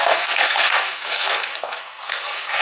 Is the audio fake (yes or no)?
yes